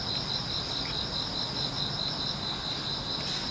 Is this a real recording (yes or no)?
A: yes